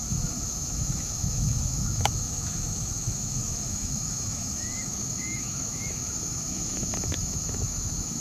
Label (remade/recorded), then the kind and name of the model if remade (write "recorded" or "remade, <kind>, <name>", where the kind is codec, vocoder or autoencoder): remade, autoencoder, DAC-VAE